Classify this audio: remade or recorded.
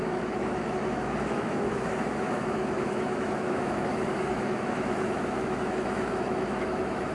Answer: remade